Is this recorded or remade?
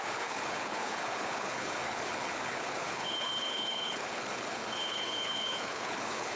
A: remade